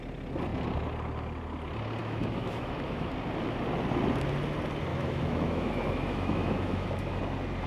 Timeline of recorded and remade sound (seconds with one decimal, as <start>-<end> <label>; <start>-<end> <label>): 0.0-2.0 recorded; 2.0-3.1 remade; 3.1-4.9 recorded; 4.9-7.2 remade; 7.2-7.7 recorded